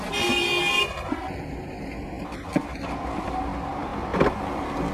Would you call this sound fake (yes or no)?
no